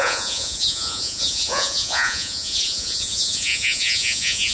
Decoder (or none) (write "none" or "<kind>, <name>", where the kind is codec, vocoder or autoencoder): vocoder, Vocos